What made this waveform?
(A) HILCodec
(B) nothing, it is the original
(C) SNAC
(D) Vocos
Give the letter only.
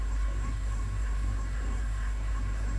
C